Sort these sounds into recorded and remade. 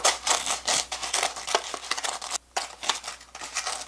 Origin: recorded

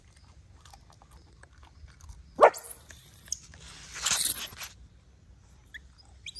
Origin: recorded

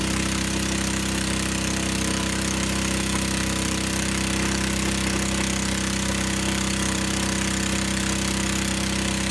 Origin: recorded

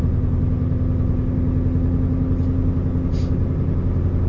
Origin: recorded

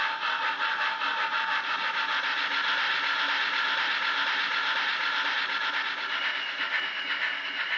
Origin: recorded